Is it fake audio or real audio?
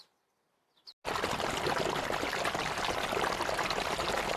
real